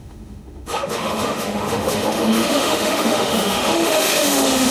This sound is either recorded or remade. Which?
remade